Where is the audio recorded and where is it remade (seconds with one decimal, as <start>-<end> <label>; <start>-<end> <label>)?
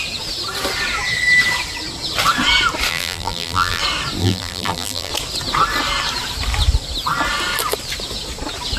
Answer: 0.0-2.9 recorded; 2.9-3.8 remade; 3.8-4.2 recorded; 4.2-5.1 remade; 5.1-8.8 recorded